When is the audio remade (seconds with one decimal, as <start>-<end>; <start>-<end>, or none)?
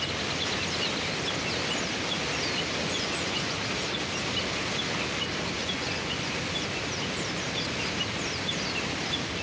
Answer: 2.8-3.6; 5.6-6.3